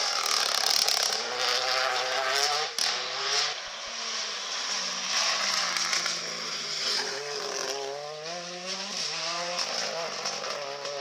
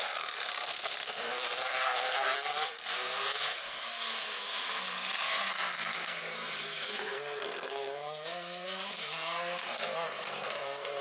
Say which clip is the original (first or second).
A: first